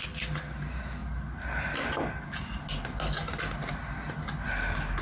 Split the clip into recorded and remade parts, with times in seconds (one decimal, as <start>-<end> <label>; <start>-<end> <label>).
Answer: 0.0-5.0 recorded